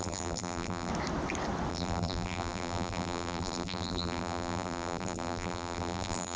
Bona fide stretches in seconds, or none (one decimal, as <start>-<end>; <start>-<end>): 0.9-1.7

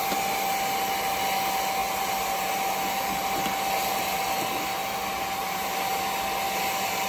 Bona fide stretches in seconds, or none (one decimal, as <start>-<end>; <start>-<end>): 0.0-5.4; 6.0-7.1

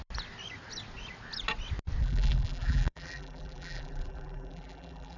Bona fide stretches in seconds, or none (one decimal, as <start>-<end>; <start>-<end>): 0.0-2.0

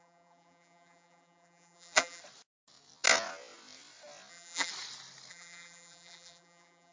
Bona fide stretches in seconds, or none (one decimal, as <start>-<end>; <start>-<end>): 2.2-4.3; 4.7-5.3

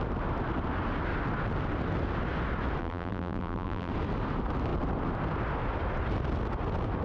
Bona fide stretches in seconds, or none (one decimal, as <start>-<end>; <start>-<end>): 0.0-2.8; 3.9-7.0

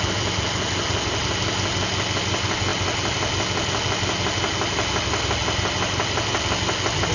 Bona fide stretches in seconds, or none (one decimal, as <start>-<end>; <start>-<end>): 0.0-7.1

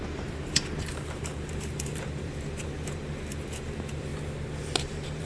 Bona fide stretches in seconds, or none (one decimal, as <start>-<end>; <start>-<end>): 4.1-4.8

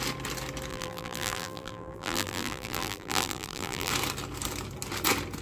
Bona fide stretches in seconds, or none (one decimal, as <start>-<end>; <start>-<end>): 0.0-0.7; 3.9-5.4